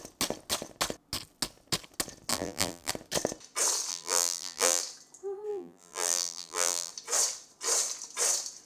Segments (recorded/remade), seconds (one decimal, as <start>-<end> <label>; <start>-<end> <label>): 0.0-2.3 recorded; 2.3-2.9 remade; 2.9-3.9 recorded; 3.9-4.8 remade; 4.8-5.5 recorded; 5.5-6.9 remade; 6.9-8.7 recorded